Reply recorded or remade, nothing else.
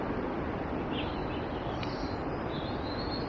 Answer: recorded